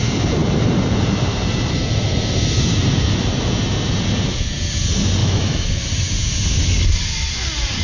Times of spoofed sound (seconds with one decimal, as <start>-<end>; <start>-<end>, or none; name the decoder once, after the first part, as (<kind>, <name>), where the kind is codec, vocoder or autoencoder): 5.2-5.8 (autoencoder, DAC-VAE)